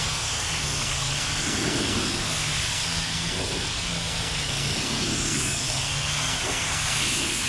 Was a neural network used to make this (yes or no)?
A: yes